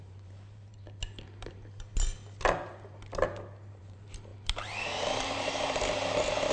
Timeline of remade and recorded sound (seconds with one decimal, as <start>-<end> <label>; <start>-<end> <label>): 0.0-1.9 remade; 1.9-3.7 recorded; 3.7-6.5 remade